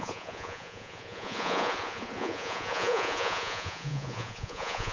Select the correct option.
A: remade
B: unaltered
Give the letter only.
A